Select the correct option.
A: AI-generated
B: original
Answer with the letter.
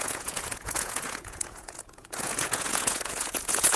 A